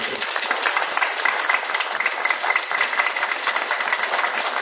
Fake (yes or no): no